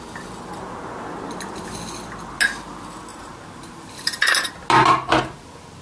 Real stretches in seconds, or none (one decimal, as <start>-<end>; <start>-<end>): 0.0-3.1; 4.5-5.8